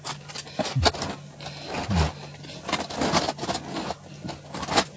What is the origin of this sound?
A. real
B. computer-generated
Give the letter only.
A